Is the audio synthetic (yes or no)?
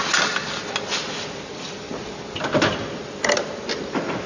no